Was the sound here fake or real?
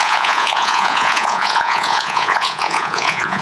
fake